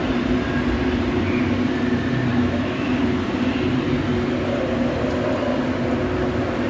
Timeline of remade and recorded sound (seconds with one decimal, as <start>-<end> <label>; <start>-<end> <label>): 0.0-2.3 recorded; 2.3-2.9 remade; 2.9-6.7 recorded